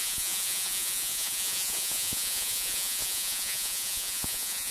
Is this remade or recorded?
remade